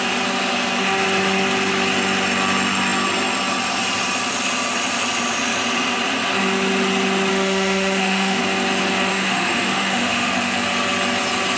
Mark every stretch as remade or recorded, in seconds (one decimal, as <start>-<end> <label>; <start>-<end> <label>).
0.0-7.3 recorded; 7.3-8.4 remade; 8.4-9.1 recorded; 9.1-10.3 remade; 10.3-11.6 recorded